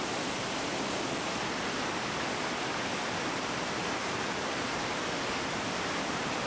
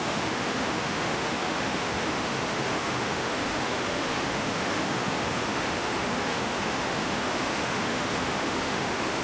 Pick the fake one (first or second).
second